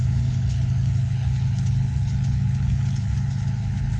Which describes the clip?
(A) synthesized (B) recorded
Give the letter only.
A